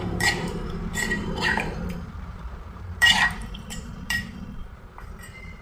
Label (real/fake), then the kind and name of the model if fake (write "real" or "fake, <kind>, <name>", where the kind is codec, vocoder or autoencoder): fake, vocoder, BigVGAN v2